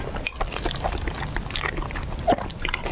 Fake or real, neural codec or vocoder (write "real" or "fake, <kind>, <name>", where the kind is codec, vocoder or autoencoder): fake, vocoder, BigVGAN v2